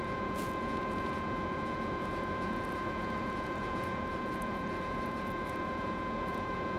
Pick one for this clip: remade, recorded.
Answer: remade